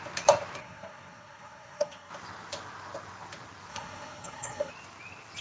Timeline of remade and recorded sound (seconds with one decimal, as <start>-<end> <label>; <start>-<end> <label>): 0.0-0.6 recorded; 0.6-2.1 remade; 2.1-3.7 recorded; 3.7-4.7 remade; 4.7-5.4 recorded